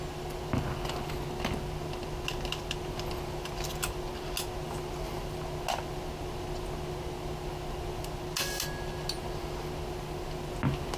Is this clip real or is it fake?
real